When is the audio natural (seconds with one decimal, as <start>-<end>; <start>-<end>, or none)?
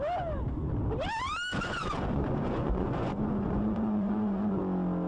0.0-1.5; 4.6-5.1